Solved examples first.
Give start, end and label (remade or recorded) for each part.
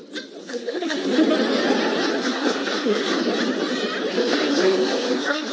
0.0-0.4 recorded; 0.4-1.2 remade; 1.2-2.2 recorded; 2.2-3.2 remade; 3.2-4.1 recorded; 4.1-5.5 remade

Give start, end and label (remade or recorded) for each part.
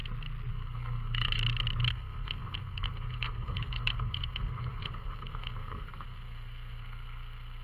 0.0-0.5 recorded; 0.5-1.3 remade; 1.3-1.9 recorded; 1.9-7.6 remade